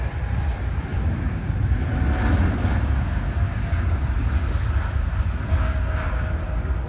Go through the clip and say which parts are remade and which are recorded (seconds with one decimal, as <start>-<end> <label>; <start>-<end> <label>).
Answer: 0.0-0.9 recorded; 0.9-1.5 remade; 1.5-2.7 recorded; 2.7-4.0 remade; 4.0-5.6 recorded; 5.6-6.4 remade; 6.4-6.9 recorded